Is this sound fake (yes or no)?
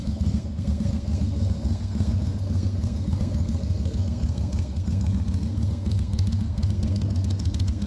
yes